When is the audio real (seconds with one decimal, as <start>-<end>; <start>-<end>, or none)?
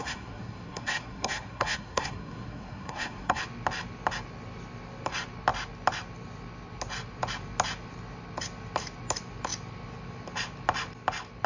3.4-11.5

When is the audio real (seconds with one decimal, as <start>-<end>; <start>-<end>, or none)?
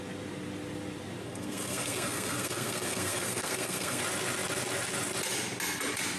0.0-1.2; 4.0-6.2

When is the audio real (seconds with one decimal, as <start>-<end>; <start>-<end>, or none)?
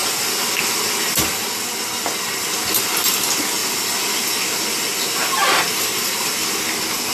0.0-7.1